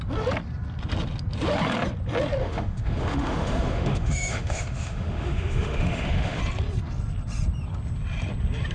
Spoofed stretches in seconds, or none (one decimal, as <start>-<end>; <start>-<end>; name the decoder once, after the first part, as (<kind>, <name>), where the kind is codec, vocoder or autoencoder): 2.4-6.4 (autoencoder, DAC-VAE)